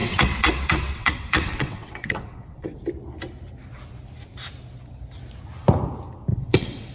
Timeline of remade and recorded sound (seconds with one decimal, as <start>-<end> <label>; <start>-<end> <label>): 0.0-2.8 remade; 2.8-6.3 recorded; 6.3-6.9 remade